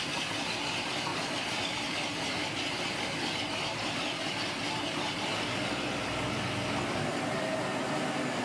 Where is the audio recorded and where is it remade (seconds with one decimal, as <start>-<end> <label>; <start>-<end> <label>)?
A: 0.0-8.4 recorded